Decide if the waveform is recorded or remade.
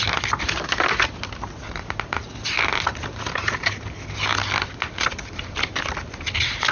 recorded